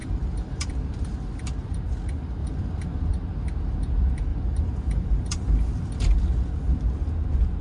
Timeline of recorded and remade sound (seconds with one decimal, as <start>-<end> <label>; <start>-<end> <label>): 0.0-0.7 remade; 0.7-2.4 recorded; 2.4-3.1 remade; 3.1-4.3 recorded; 4.3-5.6 remade; 5.6-7.6 recorded